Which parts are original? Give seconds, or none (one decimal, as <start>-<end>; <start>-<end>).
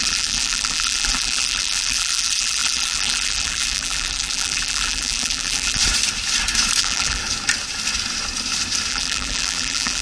5.8-6.8; 7.2-8.9